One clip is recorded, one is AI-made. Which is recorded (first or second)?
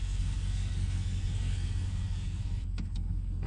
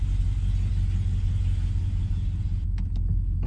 second